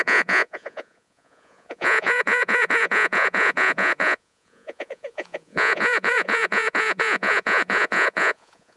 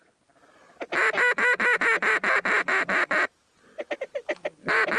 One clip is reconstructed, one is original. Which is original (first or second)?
second